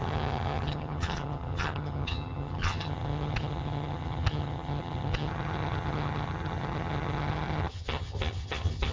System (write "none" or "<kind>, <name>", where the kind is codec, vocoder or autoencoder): vocoder, HiFi-GAN